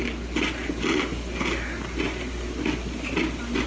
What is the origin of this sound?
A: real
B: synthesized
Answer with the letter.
A